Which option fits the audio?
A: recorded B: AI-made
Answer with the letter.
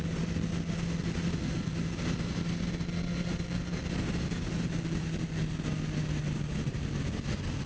A